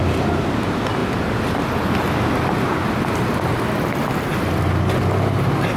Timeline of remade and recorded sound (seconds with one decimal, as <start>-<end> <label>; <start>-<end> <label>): 0.0-5.8 recorded